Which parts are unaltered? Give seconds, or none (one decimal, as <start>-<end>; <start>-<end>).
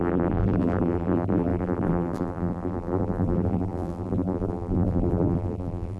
none